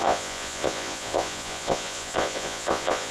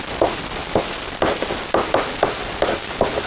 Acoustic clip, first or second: second